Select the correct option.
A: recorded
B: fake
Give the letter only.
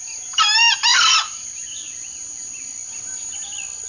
A